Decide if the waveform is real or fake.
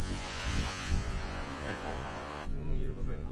fake